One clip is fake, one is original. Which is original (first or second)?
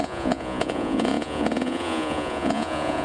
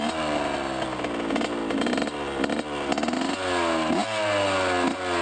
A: second